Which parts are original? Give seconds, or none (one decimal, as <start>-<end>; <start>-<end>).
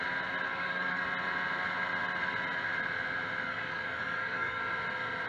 0.0-0.5; 1.0-3.4; 4.6-5.3